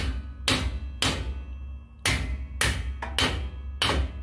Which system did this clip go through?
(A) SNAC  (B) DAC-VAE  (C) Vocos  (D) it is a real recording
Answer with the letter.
D